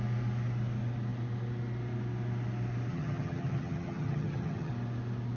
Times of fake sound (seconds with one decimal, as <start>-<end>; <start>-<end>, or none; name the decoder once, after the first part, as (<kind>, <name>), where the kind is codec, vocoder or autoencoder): 2.9-4.7 (vocoder, HiFi-GAN)